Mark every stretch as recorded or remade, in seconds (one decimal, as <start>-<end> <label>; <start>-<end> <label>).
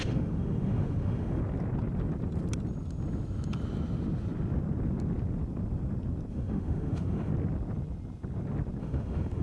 0.0-1.4 remade; 1.4-6.3 recorded; 6.3-7.3 remade; 7.3-8.8 recorded; 8.8-9.4 remade